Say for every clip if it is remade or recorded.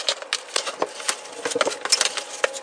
recorded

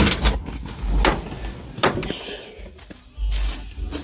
recorded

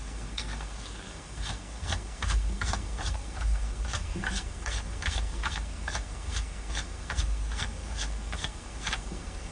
remade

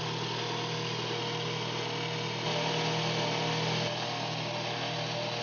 recorded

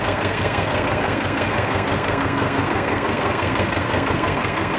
remade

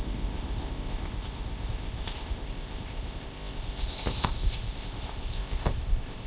remade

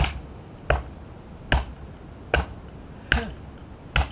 recorded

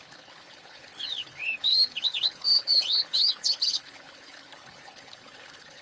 remade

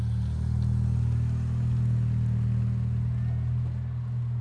recorded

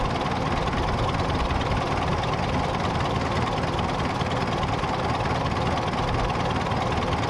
recorded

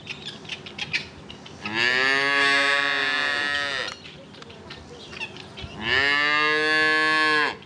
recorded